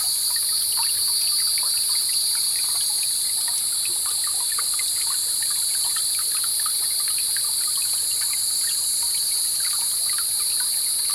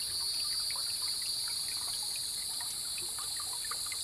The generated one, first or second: first